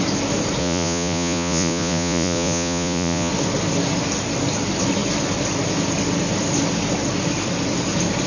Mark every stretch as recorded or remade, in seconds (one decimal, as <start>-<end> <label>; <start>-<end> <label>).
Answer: 0.0-0.6 recorded; 0.6-3.3 remade; 3.3-8.3 recorded